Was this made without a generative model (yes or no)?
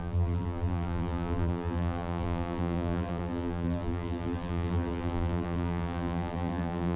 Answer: no